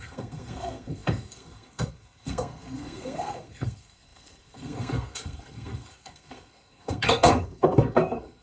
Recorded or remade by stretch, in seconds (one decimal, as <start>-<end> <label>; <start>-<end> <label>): 0.0-8.4 remade

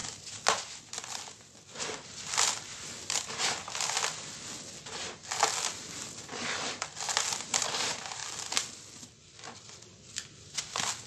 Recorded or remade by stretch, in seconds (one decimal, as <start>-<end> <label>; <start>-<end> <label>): 0.0-11.1 recorded

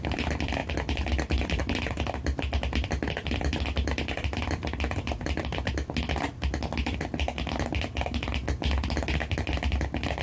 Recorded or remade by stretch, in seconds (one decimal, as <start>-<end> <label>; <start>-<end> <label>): 0.0-5.4 remade; 5.4-10.2 recorded

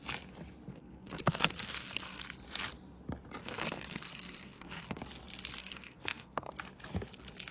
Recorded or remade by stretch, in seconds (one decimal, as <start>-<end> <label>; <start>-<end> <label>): 0.0-0.7 recorded; 0.7-2.2 remade; 2.2-3.4 recorded; 3.4-5.0 remade; 5.0-5.6 recorded; 5.6-6.5 remade; 6.5-7.5 recorded

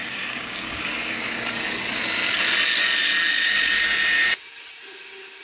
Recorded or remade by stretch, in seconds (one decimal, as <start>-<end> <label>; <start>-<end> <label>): 0.0-1.2 remade; 1.2-5.4 recorded

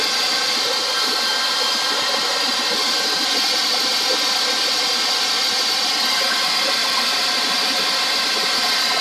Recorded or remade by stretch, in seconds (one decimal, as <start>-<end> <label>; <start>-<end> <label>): 0.0-9.0 recorded

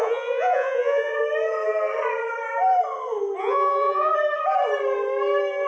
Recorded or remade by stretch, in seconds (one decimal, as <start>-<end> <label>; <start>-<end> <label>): 0.0-1.2 remade; 1.2-3.4 recorded; 3.4-4.1 remade; 4.1-5.7 recorded

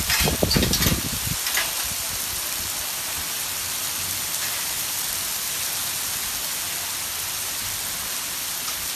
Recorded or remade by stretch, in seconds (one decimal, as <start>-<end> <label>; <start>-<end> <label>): 0.0-9.0 recorded